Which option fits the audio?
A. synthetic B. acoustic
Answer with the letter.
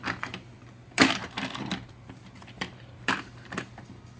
A